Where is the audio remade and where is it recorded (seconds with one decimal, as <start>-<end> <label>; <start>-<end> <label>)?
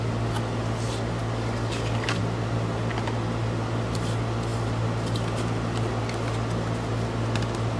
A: 0.0-1.2 recorded; 1.2-2.2 remade; 2.2-7.8 recorded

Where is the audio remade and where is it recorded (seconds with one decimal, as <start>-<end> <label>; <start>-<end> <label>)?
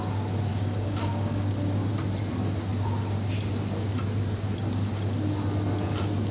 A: 0.0-0.5 recorded; 0.5-1.9 remade; 1.9-6.3 recorded